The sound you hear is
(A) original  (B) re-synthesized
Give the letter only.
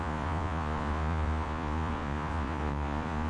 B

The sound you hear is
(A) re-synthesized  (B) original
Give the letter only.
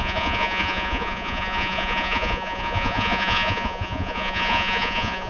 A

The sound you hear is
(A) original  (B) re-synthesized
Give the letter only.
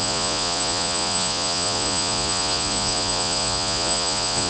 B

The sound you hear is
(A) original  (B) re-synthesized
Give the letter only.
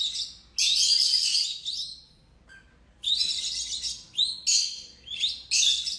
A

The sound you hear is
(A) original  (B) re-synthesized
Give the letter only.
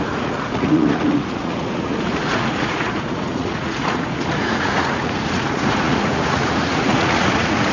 B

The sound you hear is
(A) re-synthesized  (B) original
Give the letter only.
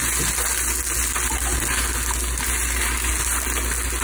B